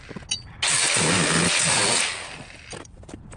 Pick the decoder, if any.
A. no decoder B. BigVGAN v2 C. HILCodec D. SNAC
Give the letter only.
A